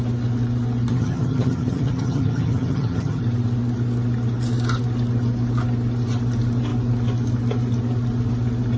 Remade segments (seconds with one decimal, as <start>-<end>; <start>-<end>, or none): 0.9-3.2